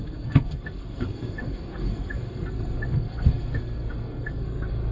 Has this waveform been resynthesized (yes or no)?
yes